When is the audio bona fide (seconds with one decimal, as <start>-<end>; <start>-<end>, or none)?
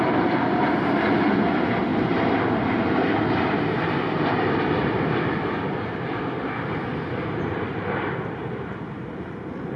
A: 0.0-9.8